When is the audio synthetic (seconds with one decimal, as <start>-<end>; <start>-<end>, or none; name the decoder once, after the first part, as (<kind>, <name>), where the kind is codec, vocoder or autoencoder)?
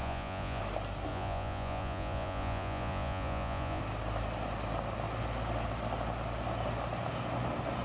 0.0-0.6 (vocoder, Vocos); 1.1-3.8